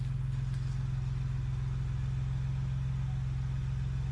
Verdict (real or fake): real